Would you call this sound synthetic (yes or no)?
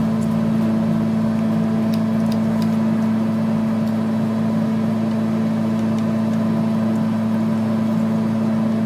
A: no